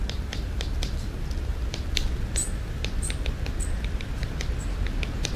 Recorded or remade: recorded